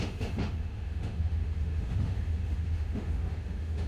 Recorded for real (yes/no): no